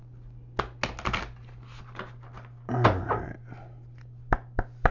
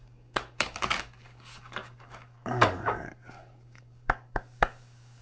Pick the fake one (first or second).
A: second